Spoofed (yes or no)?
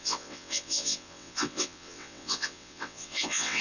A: yes